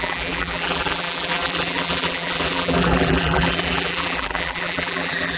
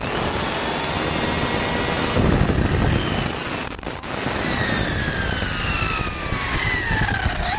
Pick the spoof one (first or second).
first